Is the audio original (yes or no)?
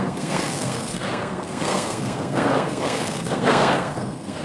no